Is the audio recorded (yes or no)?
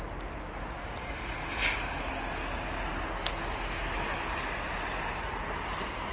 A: yes